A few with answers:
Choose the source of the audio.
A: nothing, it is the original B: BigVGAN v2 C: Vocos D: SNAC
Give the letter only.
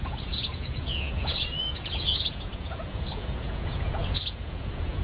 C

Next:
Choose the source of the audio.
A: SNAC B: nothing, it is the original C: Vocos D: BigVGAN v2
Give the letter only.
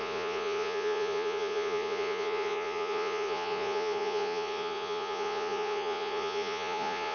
C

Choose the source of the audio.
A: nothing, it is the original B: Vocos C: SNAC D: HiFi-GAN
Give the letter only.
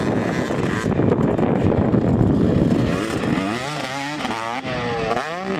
A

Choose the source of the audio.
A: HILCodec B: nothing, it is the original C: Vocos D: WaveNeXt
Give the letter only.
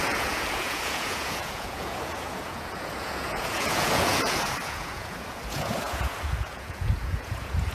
C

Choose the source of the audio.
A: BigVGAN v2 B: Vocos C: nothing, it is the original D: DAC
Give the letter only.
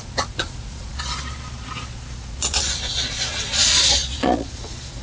B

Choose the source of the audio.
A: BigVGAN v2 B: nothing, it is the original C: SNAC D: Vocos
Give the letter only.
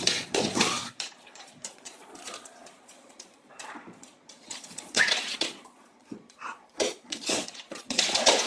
D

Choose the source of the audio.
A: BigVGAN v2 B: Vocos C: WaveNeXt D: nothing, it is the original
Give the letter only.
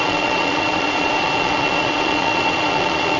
B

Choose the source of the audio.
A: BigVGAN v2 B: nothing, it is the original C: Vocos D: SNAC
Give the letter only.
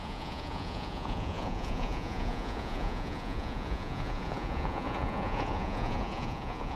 C